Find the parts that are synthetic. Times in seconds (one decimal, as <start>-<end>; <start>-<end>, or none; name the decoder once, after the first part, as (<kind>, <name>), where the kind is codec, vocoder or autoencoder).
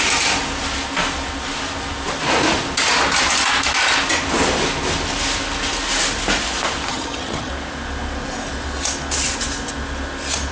6.9-7.5 (vocoder, HiFi-GAN)